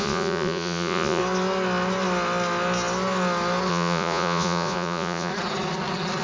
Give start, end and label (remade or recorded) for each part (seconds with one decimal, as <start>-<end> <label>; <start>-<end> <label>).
0.0-1.2 remade; 1.2-3.7 recorded; 3.7-5.3 remade; 5.3-6.2 recorded